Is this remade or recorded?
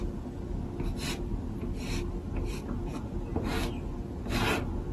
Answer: recorded